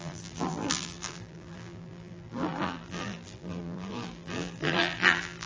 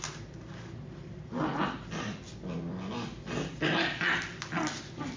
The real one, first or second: second